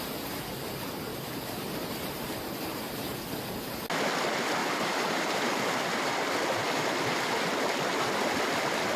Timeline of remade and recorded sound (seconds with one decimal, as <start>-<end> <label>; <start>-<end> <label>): 0.0-1.1 recorded; 1.1-3.0 remade; 3.0-4.6 recorded; 4.6-5.7 remade; 5.7-9.0 recorded